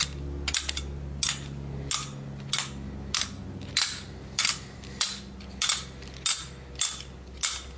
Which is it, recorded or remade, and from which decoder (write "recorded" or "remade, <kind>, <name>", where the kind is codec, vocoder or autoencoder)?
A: recorded